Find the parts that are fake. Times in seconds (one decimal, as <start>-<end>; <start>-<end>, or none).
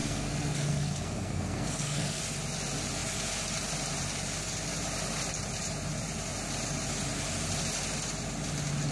0.0-2.2